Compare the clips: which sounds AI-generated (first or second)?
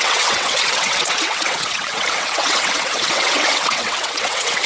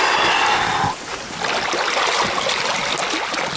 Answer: first